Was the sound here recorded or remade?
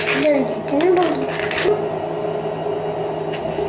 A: recorded